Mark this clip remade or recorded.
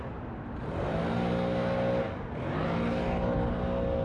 recorded